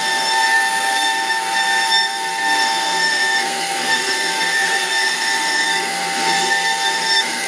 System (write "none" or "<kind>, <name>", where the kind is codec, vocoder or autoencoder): codec, SNAC